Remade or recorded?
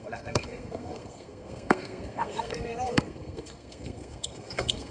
remade